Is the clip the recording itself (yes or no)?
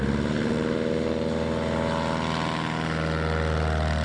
yes